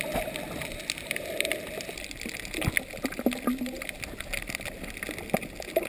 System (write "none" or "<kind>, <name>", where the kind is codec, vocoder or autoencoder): none